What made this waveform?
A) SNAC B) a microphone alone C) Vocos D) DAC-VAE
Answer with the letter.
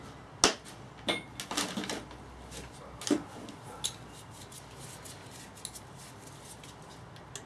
B